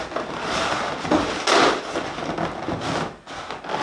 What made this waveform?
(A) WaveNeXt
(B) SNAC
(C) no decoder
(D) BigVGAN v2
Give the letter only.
C